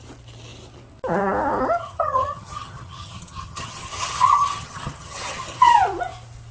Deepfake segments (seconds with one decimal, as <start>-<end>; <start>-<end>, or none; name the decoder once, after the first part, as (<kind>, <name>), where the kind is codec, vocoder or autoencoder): 1.8-5.7 (vocoder, HiFi-GAN)